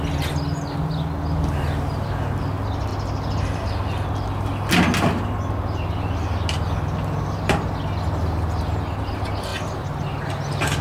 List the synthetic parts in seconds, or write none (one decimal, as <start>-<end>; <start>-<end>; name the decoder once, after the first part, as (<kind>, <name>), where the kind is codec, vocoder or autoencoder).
none